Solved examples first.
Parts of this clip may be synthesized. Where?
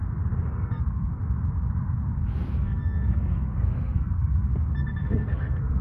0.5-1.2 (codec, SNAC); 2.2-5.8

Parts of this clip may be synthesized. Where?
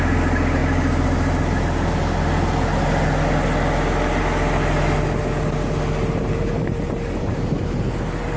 6.2-7.6 (vocoder, BigVGAN v2)